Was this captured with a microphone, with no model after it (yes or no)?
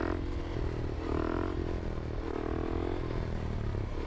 yes